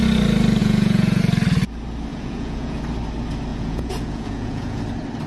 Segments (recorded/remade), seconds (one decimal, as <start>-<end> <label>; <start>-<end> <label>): 0.0-0.6 recorded; 0.6-1.2 remade; 1.2-2.1 recorded; 2.1-2.8 remade; 2.8-3.5 recorded; 3.5-4.8 remade; 4.8-5.3 recorded